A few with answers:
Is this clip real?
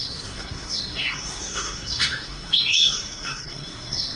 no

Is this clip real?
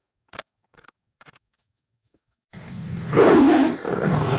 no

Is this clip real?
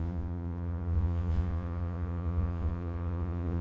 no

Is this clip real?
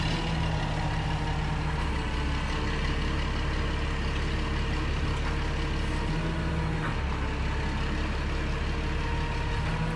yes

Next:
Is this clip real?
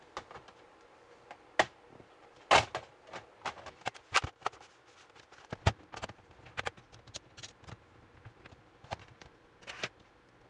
yes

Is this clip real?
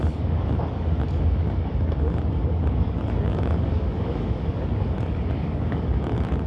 no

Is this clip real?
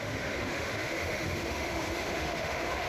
no